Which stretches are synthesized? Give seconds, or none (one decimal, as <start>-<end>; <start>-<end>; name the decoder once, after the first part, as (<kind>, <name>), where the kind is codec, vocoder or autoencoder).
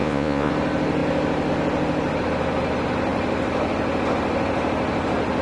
0.0-0.5 (vocoder, Vocos)